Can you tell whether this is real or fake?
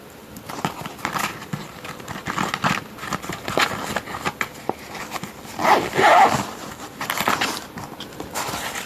real